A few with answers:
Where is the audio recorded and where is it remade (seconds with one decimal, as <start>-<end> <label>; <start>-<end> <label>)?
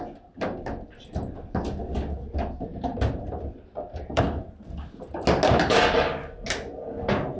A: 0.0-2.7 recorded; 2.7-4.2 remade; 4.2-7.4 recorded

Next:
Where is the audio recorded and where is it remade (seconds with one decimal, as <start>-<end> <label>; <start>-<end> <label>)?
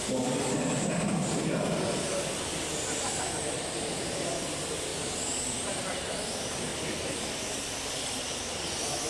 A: 0.0-4.9 remade; 4.9-5.4 recorded; 5.4-6.7 remade; 6.7-8.2 recorded; 8.2-9.1 remade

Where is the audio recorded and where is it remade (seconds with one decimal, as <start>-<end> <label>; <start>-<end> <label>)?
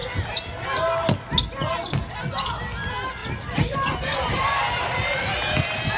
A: 0.0-3.2 recorded; 3.2-6.0 remade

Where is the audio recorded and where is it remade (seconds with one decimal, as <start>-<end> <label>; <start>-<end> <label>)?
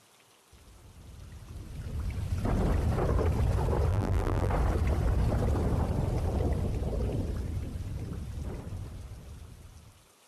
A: 0.0-3.9 recorded; 3.9-4.5 remade; 4.5-10.3 recorded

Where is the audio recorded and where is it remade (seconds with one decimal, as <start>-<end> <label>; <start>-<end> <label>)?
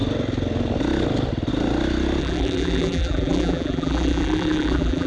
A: 0.0-2.2 recorded; 2.2-5.1 remade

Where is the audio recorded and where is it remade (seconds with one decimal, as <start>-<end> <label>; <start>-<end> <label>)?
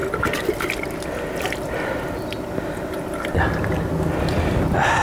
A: 0.0-5.0 recorded